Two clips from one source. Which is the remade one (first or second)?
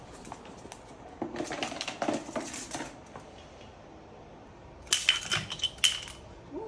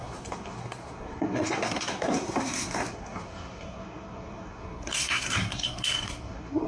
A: second